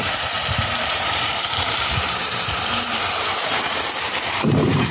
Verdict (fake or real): fake